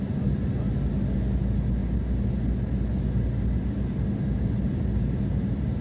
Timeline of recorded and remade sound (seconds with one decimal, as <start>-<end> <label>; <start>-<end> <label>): 0.0-5.8 recorded